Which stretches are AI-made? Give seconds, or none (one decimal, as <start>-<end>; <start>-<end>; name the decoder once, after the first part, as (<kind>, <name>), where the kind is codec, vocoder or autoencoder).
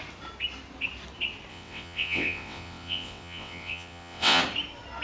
1.5-4.4 (vocoder, WaveNeXt)